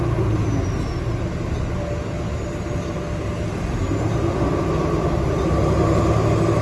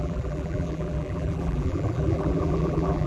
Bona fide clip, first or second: first